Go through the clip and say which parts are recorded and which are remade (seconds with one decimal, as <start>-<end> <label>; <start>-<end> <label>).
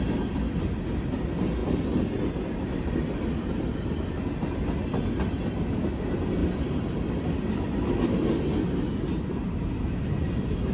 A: 0.0-10.7 recorded